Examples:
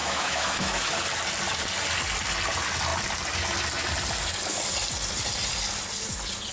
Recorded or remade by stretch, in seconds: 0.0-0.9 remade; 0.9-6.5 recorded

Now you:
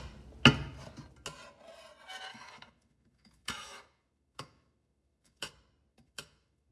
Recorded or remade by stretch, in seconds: 0.0-2.3 recorded; 2.3-5.5 remade; 5.5-5.9 recorded; 5.9-6.7 remade

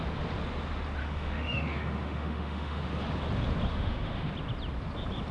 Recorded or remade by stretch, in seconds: 0.0-1.0 recorded; 1.0-2.8 remade; 2.8-3.7 recorded; 3.7-4.3 remade; 4.3-5.3 recorded